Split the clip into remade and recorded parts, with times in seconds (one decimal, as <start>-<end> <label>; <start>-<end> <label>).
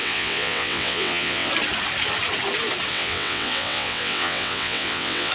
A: 0.0-1.5 remade; 1.5-2.9 recorded; 2.9-5.3 remade